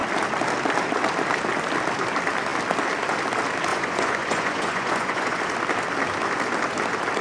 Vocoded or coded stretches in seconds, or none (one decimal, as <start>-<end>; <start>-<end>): 3.7-5.4